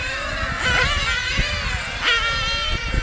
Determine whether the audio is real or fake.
real